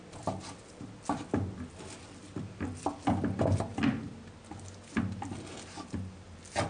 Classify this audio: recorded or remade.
recorded